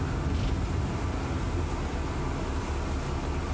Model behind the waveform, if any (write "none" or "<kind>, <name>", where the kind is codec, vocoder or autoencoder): none